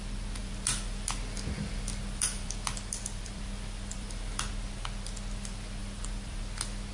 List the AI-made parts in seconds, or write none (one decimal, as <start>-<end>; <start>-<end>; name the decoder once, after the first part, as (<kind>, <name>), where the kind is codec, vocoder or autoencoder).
0.4-4.5 (vocoder, BigVGAN v2); 5.8-6.4